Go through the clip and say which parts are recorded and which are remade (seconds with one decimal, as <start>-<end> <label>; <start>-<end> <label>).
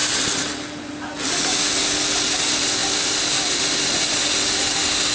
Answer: 0.0-5.1 recorded